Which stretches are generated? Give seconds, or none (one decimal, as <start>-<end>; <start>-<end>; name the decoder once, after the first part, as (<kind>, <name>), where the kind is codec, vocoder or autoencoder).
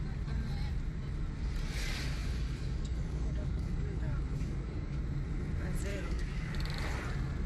2.2-5.0 (codec, DAC); 5.9-6.5